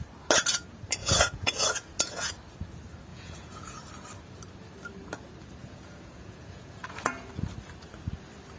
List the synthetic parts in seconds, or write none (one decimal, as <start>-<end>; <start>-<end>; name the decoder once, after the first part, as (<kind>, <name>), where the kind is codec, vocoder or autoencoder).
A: 1.0-2.3 (vocoder, Vocos); 3.1-3.9; 5.6-7.3